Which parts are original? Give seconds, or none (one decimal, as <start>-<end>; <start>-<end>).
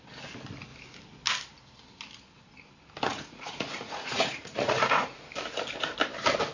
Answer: 0.0-3.1; 5.2-6.5